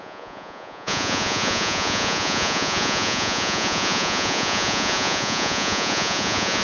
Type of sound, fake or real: fake